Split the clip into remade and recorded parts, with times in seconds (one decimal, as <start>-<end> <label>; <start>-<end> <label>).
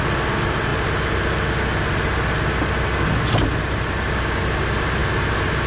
0.0-5.7 recorded